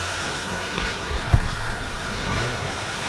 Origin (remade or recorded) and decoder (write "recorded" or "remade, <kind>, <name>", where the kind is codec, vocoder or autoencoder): remade, codec, SNAC